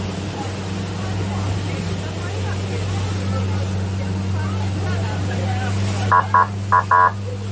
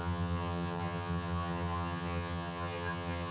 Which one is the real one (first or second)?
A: first